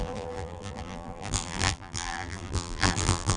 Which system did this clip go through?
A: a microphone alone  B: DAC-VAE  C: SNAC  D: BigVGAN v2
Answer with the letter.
D